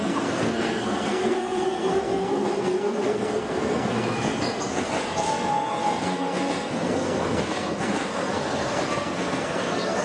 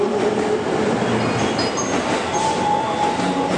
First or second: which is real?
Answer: second